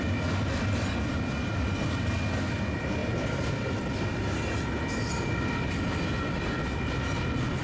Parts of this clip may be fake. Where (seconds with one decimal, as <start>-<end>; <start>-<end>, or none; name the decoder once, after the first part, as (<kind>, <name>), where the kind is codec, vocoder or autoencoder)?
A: none